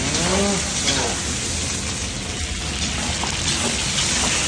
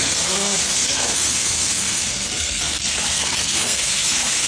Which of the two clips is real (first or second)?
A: first